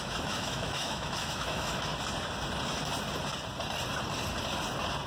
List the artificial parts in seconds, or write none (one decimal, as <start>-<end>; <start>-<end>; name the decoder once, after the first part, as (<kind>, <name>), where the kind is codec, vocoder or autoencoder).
0.0-1.9 (autoencoder, DAC-VAE)

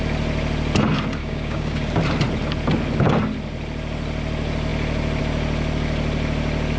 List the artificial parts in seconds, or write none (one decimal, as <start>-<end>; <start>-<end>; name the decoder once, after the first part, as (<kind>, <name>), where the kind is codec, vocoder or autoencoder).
1.2-1.9 (codec, DAC)

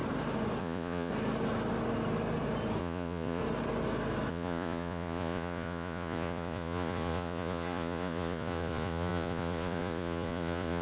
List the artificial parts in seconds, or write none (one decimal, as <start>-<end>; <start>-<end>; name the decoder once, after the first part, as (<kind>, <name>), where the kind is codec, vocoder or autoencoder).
0.6-1.1 (vocoder, Vocos); 2.8-3.4; 4.3-10.8

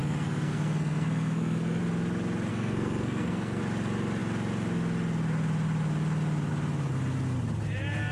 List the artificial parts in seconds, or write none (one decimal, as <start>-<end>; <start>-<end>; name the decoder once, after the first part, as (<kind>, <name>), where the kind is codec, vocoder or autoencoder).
0.0-1.8 (codec, SNAC); 2.5-3.6

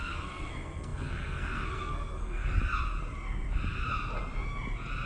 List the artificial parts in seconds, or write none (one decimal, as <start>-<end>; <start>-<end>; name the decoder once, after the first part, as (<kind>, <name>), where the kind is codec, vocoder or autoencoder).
0.0-2.6 (codec, SNAC)